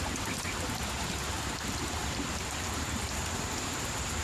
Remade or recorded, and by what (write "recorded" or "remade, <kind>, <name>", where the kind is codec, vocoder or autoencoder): remade, vocoder, BigVGAN v2